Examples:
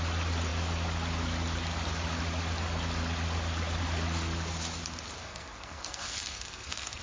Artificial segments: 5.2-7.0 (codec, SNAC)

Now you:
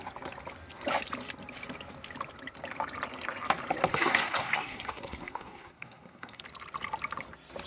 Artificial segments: 3.9-6.4 (codec, SNAC)